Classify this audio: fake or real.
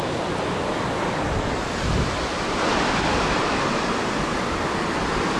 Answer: real